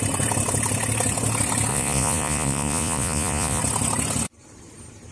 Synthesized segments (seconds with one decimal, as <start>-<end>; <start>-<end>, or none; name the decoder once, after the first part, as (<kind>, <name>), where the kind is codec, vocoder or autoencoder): 1.7-3.6 (vocoder, Vocos)